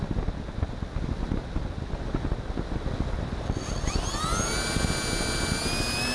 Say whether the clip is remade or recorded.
recorded